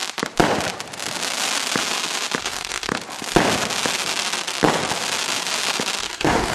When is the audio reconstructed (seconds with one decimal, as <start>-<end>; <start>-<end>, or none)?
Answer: 2.4-2.9; 6.0-6.5